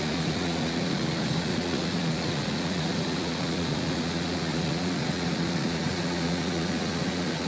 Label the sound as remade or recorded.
remade